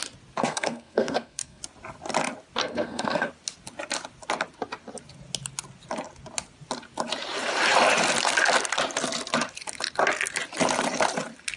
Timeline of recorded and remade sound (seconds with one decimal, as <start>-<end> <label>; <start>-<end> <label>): 0.0-0.4 recorded; 0.4-1.6 remade; 1.6-2.6 recorded; 2.6-3.3 remade; 3.3-11.6 recorded